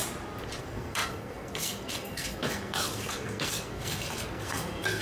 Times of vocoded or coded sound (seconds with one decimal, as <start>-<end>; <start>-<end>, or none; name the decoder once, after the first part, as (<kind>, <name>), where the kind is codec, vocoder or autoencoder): 0.6-5.0 (codec, SNAC)